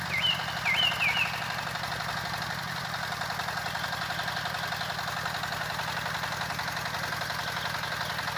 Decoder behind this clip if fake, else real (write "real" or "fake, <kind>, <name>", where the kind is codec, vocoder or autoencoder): real